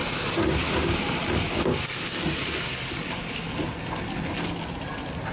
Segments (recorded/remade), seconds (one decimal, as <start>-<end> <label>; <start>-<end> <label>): 0.0-5.3 recorded